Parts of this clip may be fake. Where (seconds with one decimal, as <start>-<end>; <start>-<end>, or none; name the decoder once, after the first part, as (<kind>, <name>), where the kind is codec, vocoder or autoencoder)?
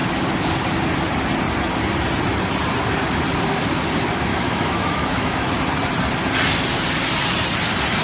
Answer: 4.3-5.5 (autoencoder, DAC-VAE)